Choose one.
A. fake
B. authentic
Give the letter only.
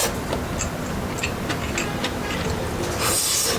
B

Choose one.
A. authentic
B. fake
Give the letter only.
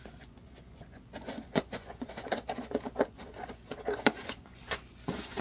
B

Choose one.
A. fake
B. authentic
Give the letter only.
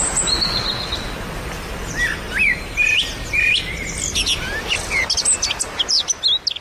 B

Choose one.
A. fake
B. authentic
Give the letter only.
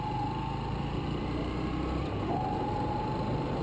B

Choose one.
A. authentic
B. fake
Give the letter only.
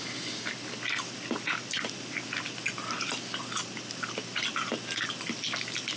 A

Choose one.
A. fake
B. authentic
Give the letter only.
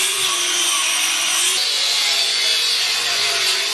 A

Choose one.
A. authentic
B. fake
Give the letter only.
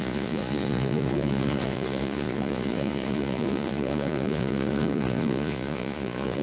B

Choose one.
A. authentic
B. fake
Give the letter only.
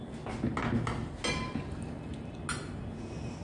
A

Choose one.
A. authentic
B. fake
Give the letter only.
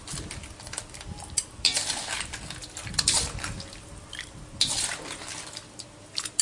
A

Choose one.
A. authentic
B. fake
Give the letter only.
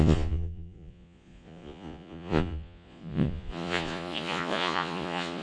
B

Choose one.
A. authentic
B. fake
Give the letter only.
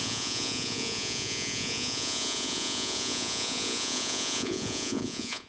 B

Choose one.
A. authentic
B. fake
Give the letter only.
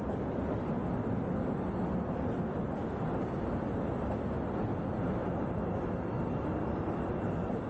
A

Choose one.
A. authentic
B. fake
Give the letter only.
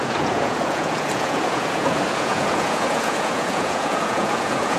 B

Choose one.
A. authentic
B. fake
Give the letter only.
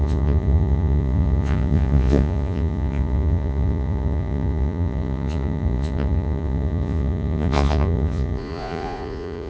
B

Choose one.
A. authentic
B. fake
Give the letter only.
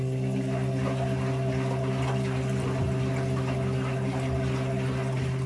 A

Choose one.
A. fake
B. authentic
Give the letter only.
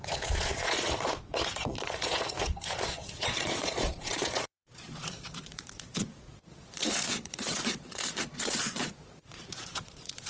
A